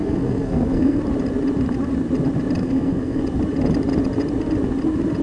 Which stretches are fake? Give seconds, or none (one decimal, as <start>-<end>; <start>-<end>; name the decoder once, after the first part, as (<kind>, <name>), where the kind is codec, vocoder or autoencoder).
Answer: 0.0-1.0 (codec, SNAC); 2.6-3.2